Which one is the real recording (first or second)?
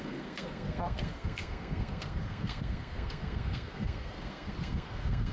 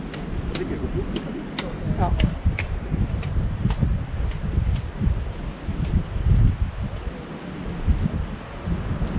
second